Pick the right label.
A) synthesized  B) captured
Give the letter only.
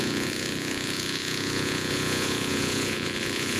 A